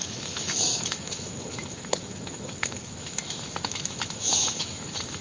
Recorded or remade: remade